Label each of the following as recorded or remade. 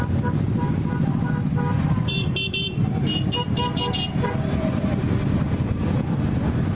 remade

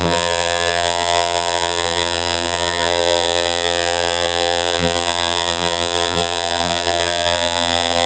remade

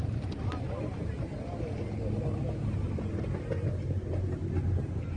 recorded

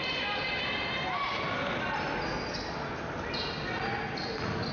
recorded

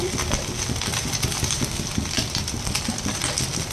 remade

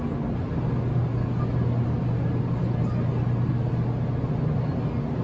recorded